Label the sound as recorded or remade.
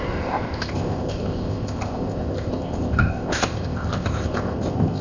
remade